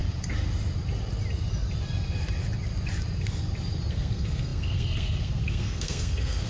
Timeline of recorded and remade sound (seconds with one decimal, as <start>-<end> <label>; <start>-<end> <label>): 0.0-3.9 recorded; 3.9-6.5 remade

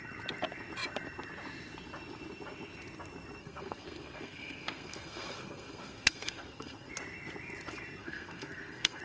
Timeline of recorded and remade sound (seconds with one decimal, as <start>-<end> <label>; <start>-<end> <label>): 0.0-3.4 recorded; 3.4-6.9 remade; 6.9-8.0 recorded; 8.0-9.0 remade

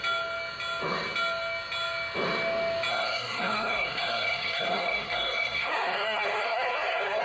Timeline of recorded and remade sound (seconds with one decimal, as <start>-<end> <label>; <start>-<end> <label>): 0.0-2.9 recorded; 2.9-7.2 remade

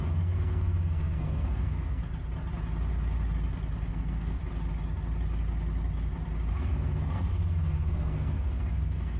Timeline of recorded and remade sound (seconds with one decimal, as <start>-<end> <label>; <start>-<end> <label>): 0.0-2.0 remade; 2.0-3.9 recorded; 3.9-4.4 remade; 4.4-6.5 recorded; 6.5-9.2 remade